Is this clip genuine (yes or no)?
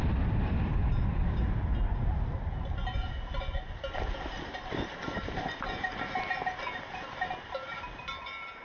yes